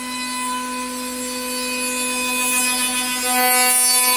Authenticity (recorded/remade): recorded